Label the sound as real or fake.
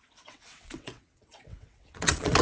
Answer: fake